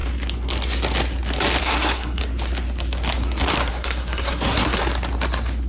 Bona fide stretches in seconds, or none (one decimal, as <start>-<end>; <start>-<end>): 0.0-1.6; 2.2-3.7; 4.8-5.7